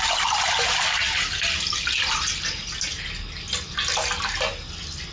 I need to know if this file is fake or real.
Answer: real